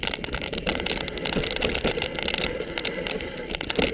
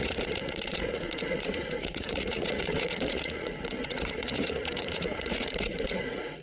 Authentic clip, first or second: first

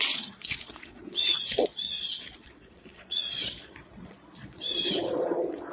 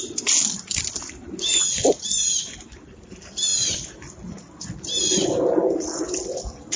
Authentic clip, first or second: second